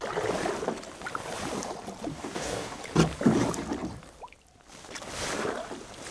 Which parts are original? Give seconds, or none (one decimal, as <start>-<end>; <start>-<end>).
0.0-2.1; 2.8-6.1